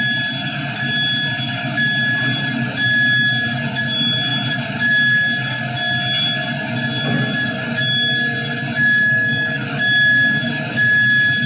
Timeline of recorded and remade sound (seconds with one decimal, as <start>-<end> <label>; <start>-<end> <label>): 0.0-9.0 recorded; 9.0-9.8 remade; 9.8-11.5 recorded

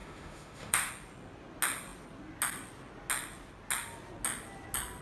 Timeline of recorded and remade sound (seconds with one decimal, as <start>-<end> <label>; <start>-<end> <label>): 0.0-0.9 remade; 0.9-5.0 recorded

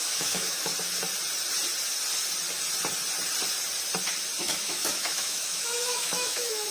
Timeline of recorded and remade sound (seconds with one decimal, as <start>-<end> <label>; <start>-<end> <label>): 0.0-0.7 remade; 0.7-4.4 recorded; 4.4-6.7 remade

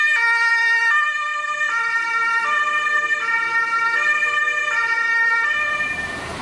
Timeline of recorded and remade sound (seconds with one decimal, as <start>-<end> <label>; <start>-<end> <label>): 0.0-6.4 recorded

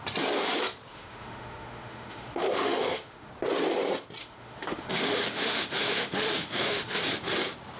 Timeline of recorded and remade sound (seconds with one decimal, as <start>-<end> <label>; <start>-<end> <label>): 0.0-0.9 recorded; 0.9-3.3 remade; 3.3-4.2 recorded; 4.2-7.0 remade; 7.0-7.8 recorded

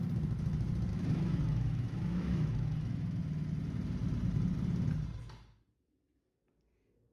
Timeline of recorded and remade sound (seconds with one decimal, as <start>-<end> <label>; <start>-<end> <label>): 0.0-0.9 recorded; 0.9-3.2 remade; 3.2-7.1 recorded

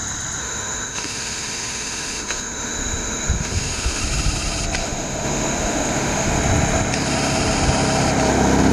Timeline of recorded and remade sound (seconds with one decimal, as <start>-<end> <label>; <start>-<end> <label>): 0.0-0.4 recorded; 0.4-4.0 remade; 4.0-4.8 recorded; 4.8-6.4 remade; 6.4-8.7 recorded